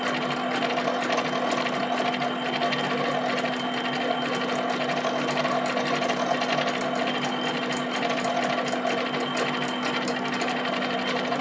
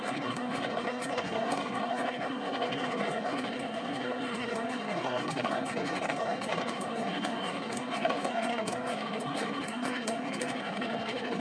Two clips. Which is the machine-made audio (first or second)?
second